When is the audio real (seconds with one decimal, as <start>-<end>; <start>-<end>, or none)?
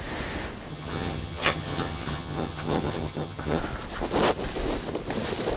0.0-0.7; 3.6-5.6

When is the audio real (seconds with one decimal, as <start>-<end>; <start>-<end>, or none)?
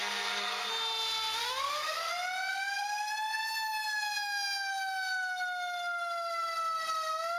0.7-1.4; 2.1-2.5; 3.1-7.4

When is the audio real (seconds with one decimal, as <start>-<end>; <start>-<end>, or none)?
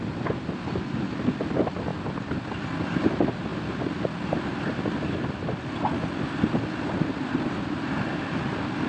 0.0-8.9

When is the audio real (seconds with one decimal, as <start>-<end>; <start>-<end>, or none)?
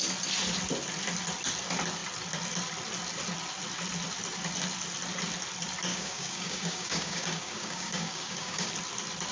0.0-5.9; 8.7-9.3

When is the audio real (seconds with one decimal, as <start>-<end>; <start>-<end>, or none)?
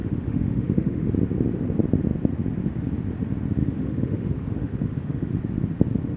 1.1-3.6; 5.3-6.2